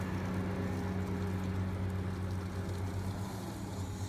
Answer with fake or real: real